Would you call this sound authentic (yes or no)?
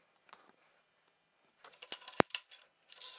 yes